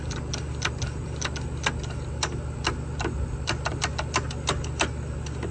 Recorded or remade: recorded